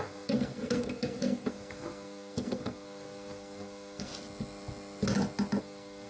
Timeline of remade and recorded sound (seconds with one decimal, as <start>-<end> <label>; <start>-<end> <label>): 0.0-4.1 remade; 4.1-5.6 recorded; 5.6-6.1 remade